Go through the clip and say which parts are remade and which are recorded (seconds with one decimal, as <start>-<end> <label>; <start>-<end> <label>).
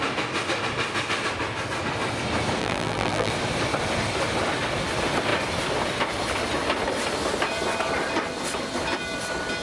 0.0-2.6 recorded; 2.6-3.3 remade; 3.3-9.6 recorded